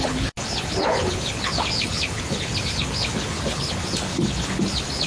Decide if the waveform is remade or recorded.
remade